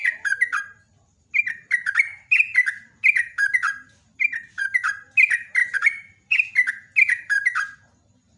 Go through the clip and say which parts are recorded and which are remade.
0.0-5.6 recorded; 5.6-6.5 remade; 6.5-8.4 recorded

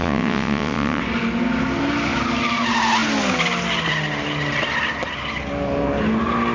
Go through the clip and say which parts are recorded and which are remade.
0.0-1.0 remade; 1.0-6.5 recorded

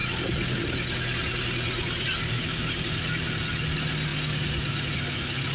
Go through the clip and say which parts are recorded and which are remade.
0.0-5.5 recorded